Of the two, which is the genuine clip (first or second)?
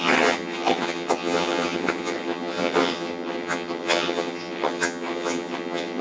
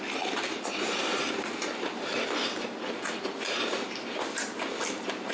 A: second